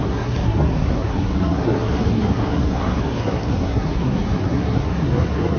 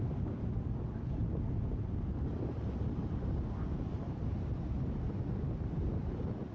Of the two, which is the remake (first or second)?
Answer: first